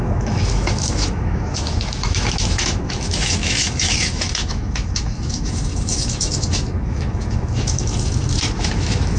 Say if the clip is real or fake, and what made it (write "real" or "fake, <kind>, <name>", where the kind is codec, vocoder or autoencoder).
fake, autoencoder, DAC-VAE